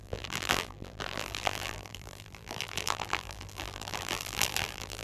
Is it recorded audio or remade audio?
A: remade